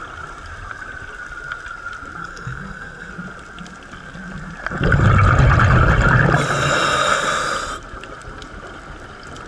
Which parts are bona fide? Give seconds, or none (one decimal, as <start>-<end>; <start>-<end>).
0.0-2.2; 3.1-9.5